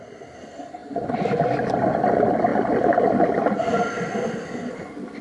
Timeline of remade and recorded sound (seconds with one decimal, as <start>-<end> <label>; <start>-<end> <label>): 0.0-5.2 recorded